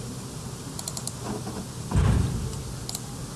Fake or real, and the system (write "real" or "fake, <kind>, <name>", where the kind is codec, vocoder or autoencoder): real